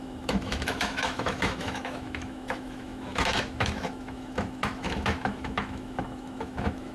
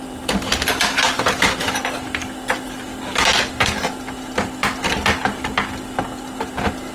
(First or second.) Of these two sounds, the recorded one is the second